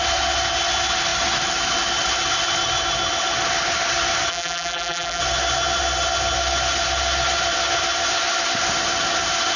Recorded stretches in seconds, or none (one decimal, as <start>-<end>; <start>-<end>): 0.0-4.3; 5.2-9.6

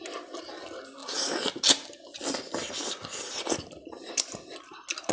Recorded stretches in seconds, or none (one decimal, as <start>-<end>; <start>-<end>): 0.0-5.1